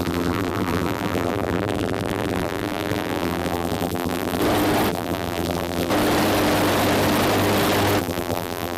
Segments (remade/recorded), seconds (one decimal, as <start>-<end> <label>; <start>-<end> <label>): 0.0-4.4 remade; 4.4-4.9 recorded; 4.9-5.9 remade; 5.9-8.0 recorded; 8.0-8.8 remade